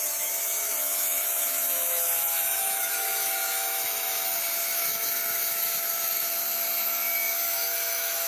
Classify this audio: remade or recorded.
remade